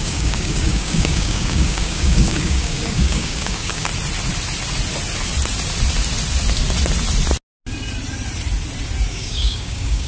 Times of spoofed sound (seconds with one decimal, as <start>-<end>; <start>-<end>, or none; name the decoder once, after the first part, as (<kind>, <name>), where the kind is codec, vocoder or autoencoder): 0.0-3.9 (codec, DAC); 9.1-10.1